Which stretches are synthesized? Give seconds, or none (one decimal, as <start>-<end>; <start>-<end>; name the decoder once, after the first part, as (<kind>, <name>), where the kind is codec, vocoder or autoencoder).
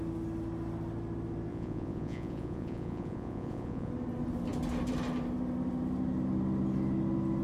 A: 1.5-3.9 (vocoder, Vocos)